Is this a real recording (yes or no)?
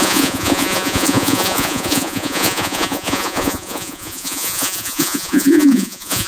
no